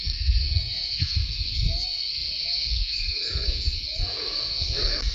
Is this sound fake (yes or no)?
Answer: yes